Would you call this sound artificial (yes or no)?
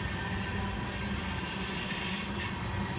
no